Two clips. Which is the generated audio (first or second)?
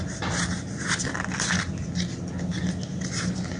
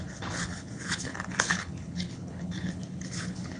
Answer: second